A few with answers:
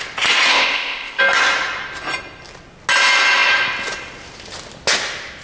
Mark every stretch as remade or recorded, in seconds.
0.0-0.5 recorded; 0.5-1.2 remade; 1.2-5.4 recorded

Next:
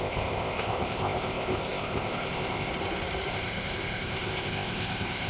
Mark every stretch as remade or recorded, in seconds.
0.0-2.7 remade; 2.7-3.3 recorded; 3.3-5.3 remade

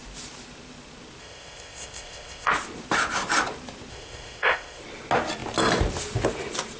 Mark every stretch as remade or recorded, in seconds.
0.0-1.2 recorded; 1.2-2.5 remade; 2.5-3.9 recorded; 3.9-4.8 remade; 4.8-6.8 recorded

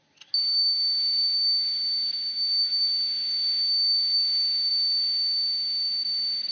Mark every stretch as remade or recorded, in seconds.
0.0-6.5 recorded